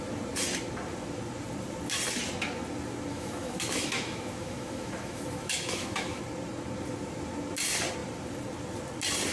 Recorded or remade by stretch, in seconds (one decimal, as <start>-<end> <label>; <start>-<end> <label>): 0.0-3.1 recorded; 3.1-6.2 remade; 6.2-9.3 recorded